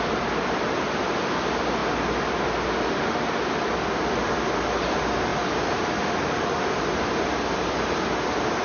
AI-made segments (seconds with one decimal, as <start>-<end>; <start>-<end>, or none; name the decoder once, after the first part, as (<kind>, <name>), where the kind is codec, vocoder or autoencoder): 0.0-1.8 (vocoder, BigVGAN v2); 3.5-8.6